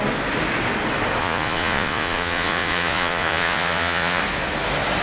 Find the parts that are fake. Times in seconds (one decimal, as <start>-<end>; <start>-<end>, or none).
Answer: 1.2-4.2